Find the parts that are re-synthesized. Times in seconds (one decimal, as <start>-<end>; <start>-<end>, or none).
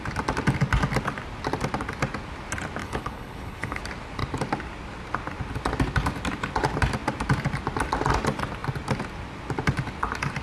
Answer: 2.8-3.8